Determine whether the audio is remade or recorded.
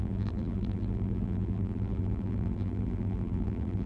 remade